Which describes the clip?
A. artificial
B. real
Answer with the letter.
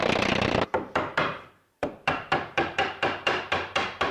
A